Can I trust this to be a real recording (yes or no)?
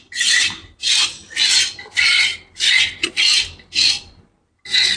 yes